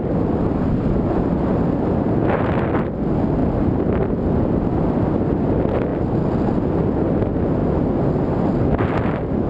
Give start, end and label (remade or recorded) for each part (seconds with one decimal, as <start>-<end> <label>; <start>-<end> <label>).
0.0-9.5 recorded